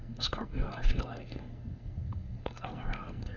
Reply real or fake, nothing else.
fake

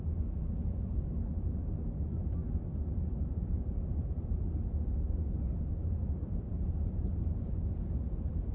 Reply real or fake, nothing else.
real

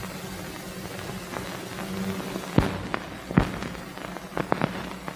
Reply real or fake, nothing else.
real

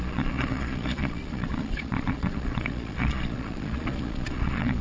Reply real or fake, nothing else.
fake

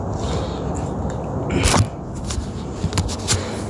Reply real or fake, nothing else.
real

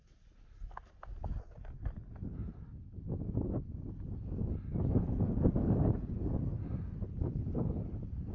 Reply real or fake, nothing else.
real